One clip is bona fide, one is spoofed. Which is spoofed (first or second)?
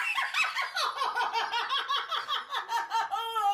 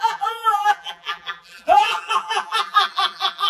second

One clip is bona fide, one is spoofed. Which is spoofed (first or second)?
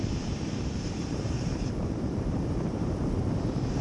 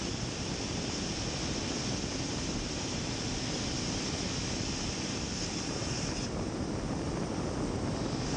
first